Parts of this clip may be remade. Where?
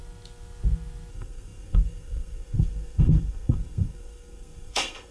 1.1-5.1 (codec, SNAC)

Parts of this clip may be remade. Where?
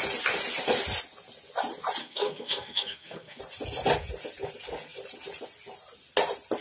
2.0-3.4 (codec, SNAC)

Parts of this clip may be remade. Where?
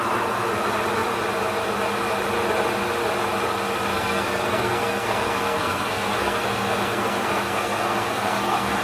3.9-8.8 (codec, SNAC)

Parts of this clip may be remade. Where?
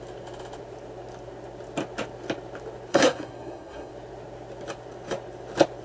2.9-3.9 (codec, SNAC)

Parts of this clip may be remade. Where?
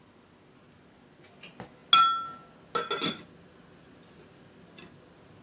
none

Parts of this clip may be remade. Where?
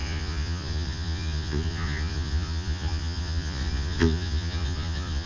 0.0-5.3 (vocoder, Vocos)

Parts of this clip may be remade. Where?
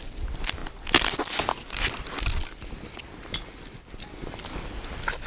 none